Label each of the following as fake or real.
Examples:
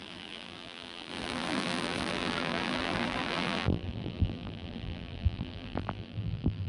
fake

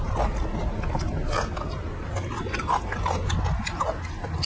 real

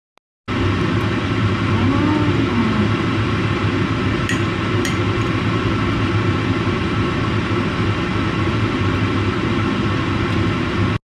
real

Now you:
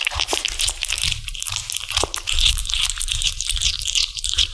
fake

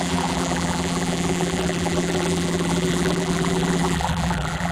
fake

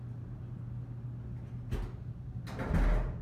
real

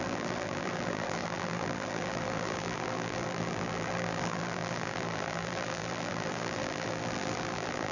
fake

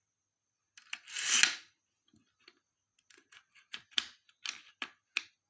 real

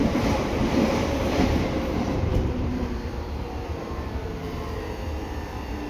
fake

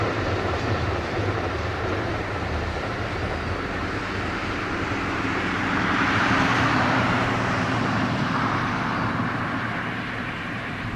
fake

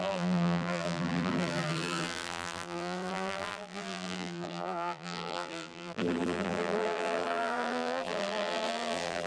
fake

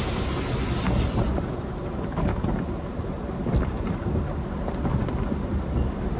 real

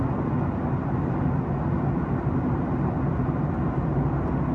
real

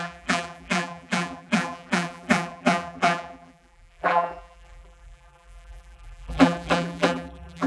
fake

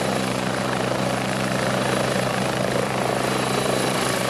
fake